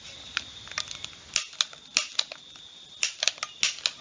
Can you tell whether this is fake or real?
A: real